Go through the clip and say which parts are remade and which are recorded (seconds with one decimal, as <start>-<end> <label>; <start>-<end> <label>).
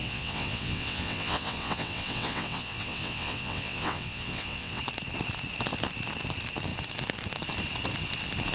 0.0-4.8 remade; 4.8-8.5 recorded